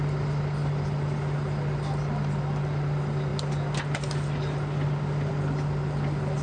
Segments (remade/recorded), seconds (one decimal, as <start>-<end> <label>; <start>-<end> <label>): 0.0-6.4 recorded